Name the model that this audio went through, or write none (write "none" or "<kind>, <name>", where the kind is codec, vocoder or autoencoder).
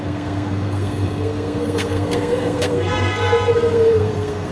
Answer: codec, SNAC